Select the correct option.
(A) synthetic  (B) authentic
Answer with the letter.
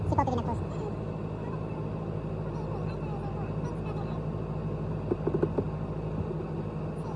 B